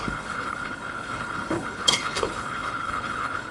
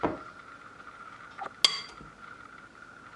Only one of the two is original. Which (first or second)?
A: second